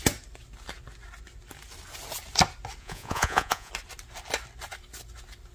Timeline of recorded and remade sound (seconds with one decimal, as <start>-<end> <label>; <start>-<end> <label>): 0.0-2.8 recorded; 2.8-3.7 remade; 3.7-5.5 recorded